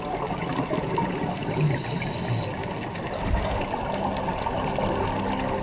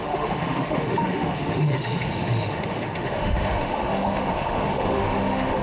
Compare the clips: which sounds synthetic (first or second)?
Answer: second